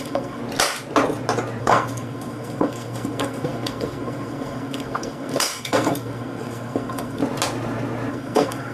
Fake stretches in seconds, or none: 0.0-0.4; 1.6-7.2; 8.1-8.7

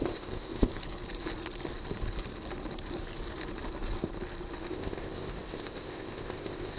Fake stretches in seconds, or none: 0.0-0.7; 4.7-6.8

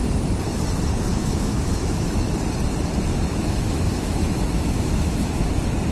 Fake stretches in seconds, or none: 1.1-2.4; 3.1-5.5

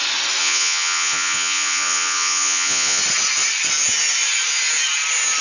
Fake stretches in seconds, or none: 0.4-3.0

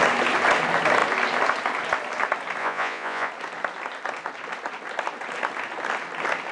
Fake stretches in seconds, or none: 2.6-3.3

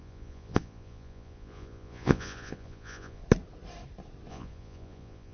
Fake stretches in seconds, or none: 0.0-3.2; 4.3-5.3